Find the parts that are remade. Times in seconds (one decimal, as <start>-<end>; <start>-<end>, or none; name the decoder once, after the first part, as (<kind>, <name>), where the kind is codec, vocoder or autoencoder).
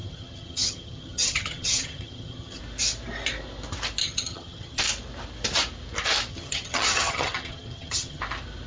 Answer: 0.0-2.6 (vocoder, HiFi-GAN); 4.0-4.8; 6.3-8.2